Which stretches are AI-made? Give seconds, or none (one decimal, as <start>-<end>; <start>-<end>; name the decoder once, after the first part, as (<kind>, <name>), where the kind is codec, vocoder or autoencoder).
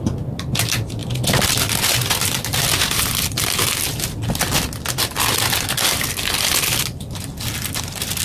none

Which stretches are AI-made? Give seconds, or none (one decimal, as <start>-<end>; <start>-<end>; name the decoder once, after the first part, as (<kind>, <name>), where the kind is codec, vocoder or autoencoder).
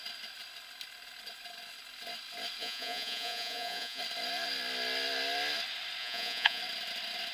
2.6-4.0 (vocoder, Vocos); 6.0-6.6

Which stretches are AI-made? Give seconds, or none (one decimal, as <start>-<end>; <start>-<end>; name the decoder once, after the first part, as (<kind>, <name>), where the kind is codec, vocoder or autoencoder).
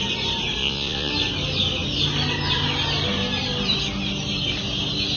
0.6-1.1 (vocoder, Vocos)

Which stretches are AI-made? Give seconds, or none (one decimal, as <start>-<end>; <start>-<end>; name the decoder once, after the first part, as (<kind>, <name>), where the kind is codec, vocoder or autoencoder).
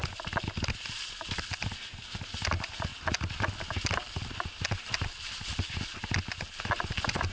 none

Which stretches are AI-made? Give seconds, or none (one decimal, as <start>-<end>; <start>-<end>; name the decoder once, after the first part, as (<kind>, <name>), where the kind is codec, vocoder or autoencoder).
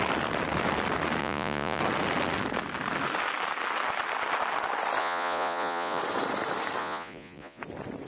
1.2-1.8 (vocoder, Vocos); 5.0-6.0; 6.8-7.6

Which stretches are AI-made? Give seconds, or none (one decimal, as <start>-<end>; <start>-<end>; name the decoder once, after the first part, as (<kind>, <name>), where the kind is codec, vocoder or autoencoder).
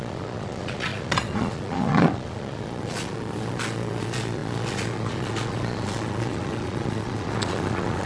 0.0-8.1 (vocoder, Vocos)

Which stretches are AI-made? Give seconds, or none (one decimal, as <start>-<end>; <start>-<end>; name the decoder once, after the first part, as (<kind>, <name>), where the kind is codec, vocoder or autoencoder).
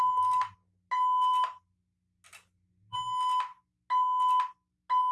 none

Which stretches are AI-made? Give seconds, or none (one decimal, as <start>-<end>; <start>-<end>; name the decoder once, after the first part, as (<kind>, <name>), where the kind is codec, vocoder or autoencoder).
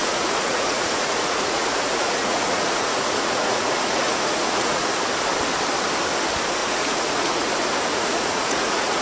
0.0-4.9 (vocoder, Vocos); 6.6-7.5; 7.9-9.0